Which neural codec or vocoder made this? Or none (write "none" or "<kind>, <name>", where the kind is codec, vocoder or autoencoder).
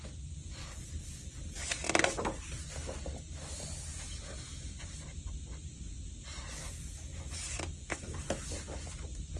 none